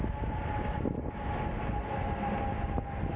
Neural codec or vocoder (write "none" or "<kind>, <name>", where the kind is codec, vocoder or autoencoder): none